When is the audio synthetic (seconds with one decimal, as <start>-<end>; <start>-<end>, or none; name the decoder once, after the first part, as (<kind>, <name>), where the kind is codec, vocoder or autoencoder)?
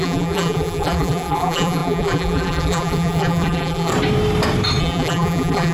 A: 0.0-3.9 (vocoder, BigVGAN v2); 4.8-5.7